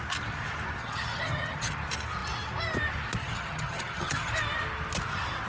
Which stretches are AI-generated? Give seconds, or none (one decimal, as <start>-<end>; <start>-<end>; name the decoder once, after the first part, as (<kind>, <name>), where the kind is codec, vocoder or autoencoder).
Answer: 0.8-1.7 (vocoder, HiFi-GAN); 3.2-4.3

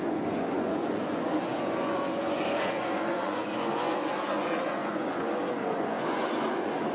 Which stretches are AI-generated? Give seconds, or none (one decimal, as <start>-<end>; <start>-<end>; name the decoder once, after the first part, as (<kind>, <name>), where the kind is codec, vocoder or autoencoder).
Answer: 0.0-6.9 (vocoder, Vocos)